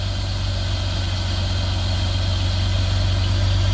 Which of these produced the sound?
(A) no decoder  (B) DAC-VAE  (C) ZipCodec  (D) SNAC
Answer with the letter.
A